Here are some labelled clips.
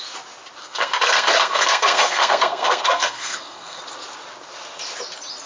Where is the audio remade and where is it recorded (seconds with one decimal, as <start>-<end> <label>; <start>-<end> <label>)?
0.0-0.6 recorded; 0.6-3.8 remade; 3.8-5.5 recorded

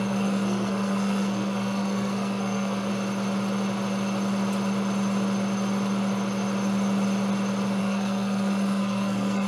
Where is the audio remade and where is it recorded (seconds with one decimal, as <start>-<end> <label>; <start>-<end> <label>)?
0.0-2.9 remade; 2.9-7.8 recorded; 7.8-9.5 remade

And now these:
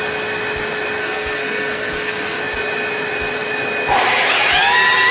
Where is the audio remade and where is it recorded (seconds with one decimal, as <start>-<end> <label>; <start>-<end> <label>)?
0.0-1.0 recorded; 1.0-2.4 remade; 2.4-5.1 recorded

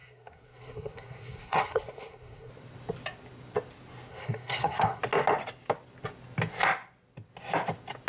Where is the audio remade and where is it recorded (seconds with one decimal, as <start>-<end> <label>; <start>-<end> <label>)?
0.0-2.5 remade; 2.5-4.1 recorded; 4.1-5.0 remade; 5.0-8.1 recorded